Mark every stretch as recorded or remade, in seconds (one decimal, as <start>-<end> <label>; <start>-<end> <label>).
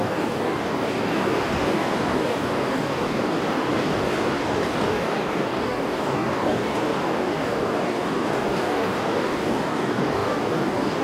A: 0.0-11.0 remade